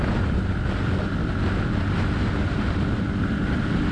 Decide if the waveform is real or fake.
real